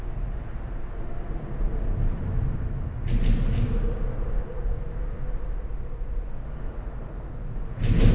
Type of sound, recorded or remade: recorded